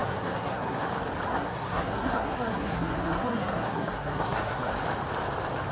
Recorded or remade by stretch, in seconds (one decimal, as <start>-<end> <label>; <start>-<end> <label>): 0.0-0.9 remade; 0.9-1.3 recorded; 1.3-4.7 remade; 4.7-5.7 recorded

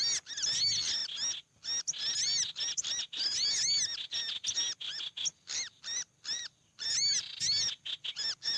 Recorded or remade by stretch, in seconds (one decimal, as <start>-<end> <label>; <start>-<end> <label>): 0.0-8.6 recorded

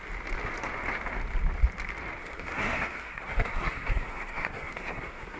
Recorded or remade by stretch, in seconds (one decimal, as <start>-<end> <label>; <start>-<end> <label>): 0.0-2.2 recorded; 2.2-5.4 remade

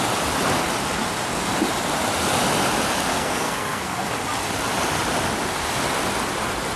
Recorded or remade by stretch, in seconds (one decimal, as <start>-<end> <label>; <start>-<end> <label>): 0.0-3.1 recorded; 3.1-4.1 remade; 4.1-6.8 recorded

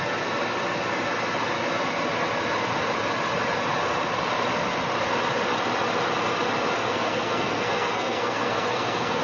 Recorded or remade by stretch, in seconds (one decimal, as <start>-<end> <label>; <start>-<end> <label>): 0.0-6.9 recorded; 6.9-9.2 remade

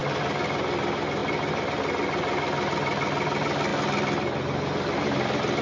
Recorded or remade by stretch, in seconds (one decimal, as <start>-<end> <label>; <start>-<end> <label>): 0.0-5.6 recorded